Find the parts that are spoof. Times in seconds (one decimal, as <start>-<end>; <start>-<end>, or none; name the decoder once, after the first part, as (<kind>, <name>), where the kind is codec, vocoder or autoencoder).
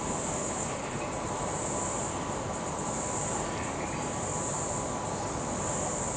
0.4-1.0 (codec, HILCodec)